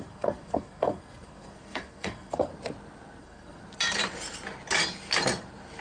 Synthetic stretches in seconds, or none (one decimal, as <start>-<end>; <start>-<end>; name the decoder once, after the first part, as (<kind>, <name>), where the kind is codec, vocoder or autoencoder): 0.0-2.5 (codec, SNAC); 3.2-3.6